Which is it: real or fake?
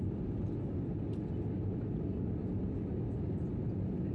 real